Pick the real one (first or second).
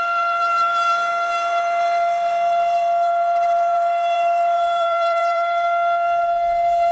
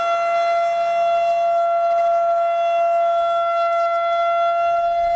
second